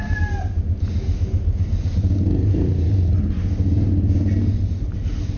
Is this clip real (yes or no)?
yes